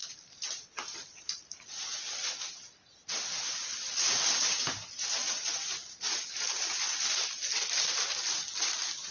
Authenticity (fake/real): real